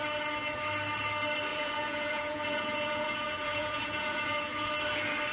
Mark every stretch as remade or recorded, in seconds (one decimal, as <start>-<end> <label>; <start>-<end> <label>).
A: 0.0-1.5 recorded; 1.5-4.7 remade; 4.7-5.3 recorded